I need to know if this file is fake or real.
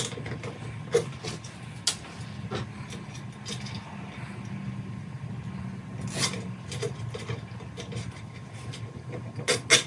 real